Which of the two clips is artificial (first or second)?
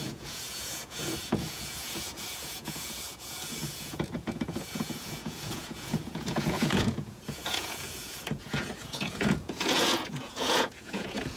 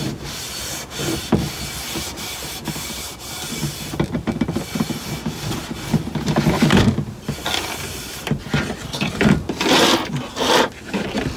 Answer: first